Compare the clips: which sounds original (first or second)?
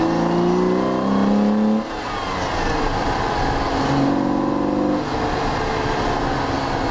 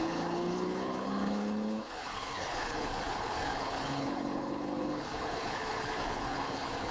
first